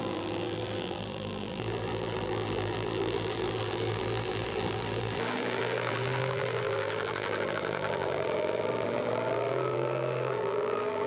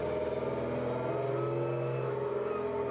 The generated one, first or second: first